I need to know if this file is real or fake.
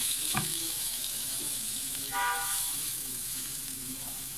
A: fake